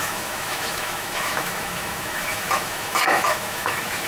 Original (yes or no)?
no